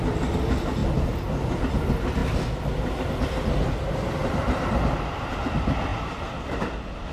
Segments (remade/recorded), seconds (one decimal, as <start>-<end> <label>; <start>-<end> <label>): 0.0-4.2 recorded; 4.2-4.7 remade; 4.7-5.9 recorded; 5.9-6.6 remade; 6.6-7.1 recorded